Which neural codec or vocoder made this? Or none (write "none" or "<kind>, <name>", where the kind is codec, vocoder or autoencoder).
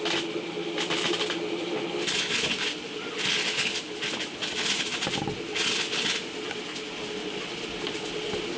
none